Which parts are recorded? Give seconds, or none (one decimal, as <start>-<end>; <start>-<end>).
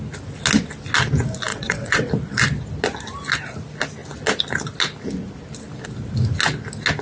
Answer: 0.0-1.5; 2.1-7.0